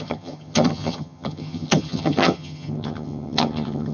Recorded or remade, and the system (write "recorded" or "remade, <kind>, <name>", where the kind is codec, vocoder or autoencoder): remade, vocoder, HiFi-GAN